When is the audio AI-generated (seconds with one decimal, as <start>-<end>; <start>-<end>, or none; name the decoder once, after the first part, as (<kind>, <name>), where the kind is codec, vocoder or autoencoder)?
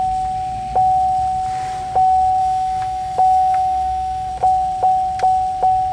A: 2.4-4.3 (autoencoder, DAC-VAE)